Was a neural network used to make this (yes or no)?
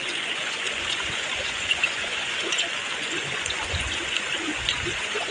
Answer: yes